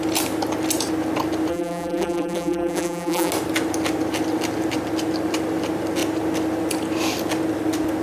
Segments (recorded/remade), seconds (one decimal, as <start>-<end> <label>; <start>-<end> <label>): 0.0-1.5 recorded; 1.5-3.3 remade; 3.3-8.0 recorded